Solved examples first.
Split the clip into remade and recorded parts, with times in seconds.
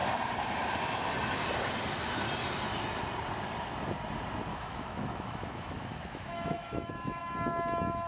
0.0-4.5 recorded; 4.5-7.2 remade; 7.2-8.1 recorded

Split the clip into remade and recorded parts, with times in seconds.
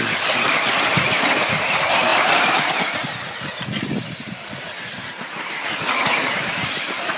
0.0-7.2 recorded